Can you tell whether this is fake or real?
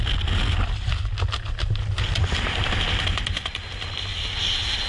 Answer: real